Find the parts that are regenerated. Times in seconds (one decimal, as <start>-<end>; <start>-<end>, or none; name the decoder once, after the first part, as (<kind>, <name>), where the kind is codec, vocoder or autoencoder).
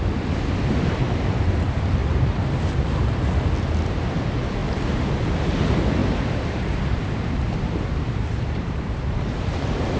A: 2.0-3.2 (vocoder, BigVGAN v2); 4.6-5.5; 6.0-9.6